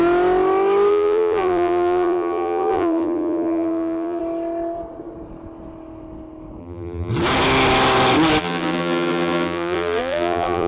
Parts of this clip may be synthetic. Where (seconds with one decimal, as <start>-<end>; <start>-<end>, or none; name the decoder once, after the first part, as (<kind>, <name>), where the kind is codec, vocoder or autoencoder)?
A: 0.9-4.2 (vocoder, BigVGAN v2); 6.6-7.1; 8.4-10.7